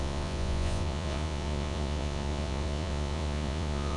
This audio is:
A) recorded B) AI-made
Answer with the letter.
B